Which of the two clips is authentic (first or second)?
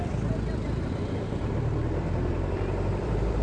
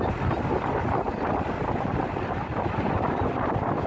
second